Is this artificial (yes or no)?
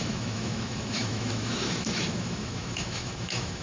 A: yes